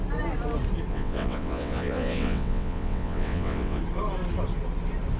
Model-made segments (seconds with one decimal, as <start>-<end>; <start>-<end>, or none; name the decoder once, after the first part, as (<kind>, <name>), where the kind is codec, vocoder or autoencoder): 0.9-3.8 (vocoder, WaveNeXt)